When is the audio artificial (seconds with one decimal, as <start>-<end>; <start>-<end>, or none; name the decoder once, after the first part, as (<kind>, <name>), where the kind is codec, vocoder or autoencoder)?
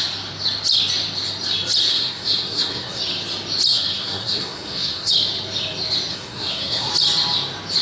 1.9-3.0 (codec, SNAC); 3.7-5.1; 6.1-6.9